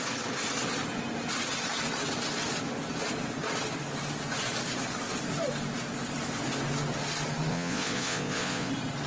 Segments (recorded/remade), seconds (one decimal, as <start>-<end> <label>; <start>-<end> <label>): 0.0-7.5 recorded; 7.5-8.7 remade; 8.7-9.1 recorded